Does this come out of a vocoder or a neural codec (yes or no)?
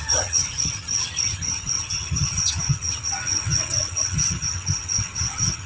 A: yes